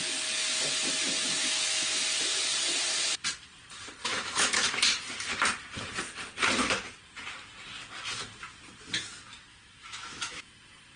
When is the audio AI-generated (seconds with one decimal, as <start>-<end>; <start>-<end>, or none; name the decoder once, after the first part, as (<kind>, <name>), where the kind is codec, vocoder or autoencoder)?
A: 1.4-2.0 (autoencoder, DAC-VAE); 4.0-4.7; 9.5-10.5